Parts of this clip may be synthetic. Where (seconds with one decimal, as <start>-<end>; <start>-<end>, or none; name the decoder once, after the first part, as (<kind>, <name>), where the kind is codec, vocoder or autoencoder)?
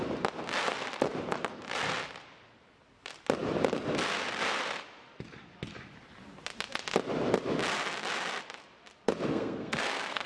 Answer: 9.3-10.3 (codec, SNAC)